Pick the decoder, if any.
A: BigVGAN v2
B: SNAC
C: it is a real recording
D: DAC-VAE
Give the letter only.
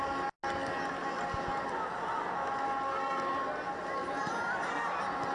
C